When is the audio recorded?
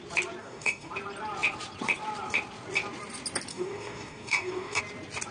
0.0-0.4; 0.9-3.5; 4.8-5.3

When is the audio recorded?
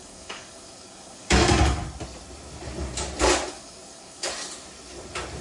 1.8-3.5; 4.3-5.4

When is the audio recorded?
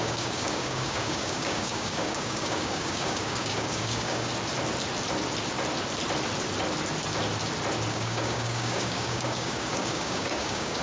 4.3-7.9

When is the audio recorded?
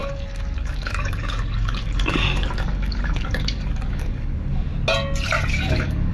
4.7-5.5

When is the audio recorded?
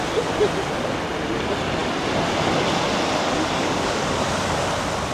0.0-3.2; 4.2-5.1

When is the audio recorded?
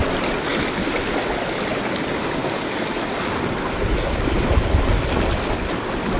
0.0-6.2